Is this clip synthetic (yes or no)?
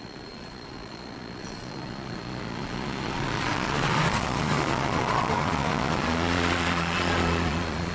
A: yes